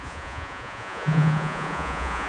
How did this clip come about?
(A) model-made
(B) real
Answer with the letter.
A